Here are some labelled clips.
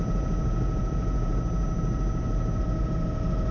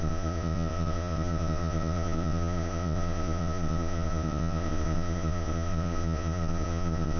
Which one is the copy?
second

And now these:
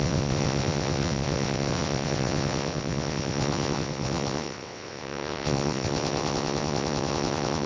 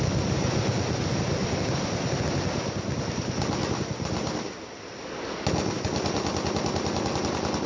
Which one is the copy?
first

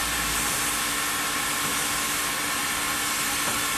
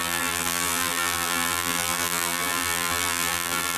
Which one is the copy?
second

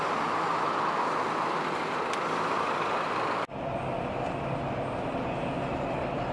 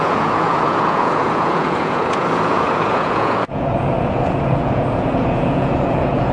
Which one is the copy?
second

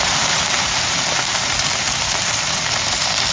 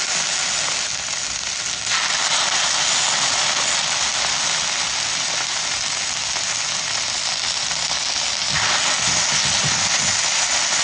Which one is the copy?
first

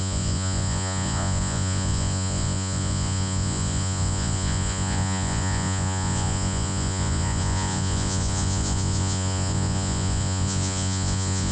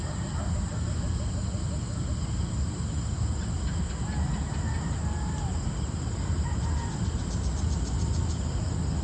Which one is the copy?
first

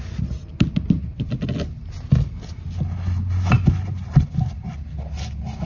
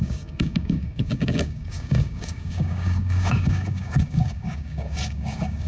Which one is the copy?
second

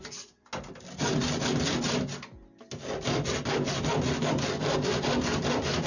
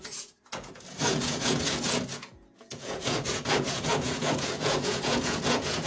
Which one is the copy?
second